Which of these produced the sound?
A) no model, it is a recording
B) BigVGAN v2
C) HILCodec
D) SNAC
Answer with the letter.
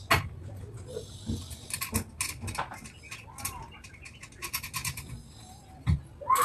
A